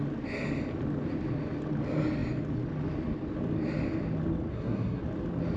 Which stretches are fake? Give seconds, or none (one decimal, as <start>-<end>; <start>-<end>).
4.5-5.0